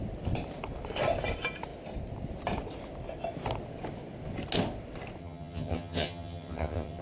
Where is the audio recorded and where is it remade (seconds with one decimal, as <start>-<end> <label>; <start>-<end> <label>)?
0.0-5.2 recorded; 5.2-7.0 remade